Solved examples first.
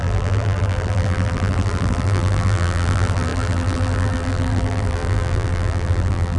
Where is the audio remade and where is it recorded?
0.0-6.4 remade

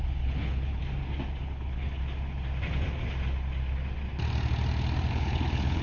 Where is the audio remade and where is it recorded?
0.0-0.8 remade; 0.8-1.4 recorded; 1.4-2.0 remade; 2.0-5.1 recorded; 5.1-5.8 remade